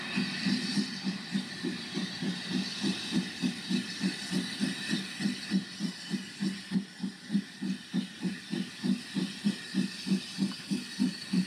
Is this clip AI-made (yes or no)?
no